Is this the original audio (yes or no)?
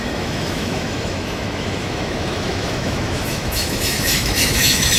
no